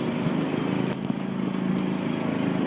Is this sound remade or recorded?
recorded